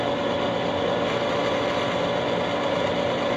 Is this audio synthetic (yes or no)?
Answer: no